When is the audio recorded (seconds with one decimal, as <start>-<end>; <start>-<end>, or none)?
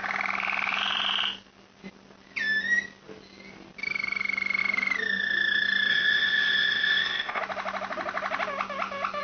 0.0-5.9; 7.4-9.2